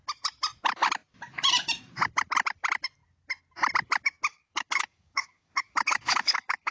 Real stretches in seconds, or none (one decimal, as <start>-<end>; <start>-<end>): 0.0-4.3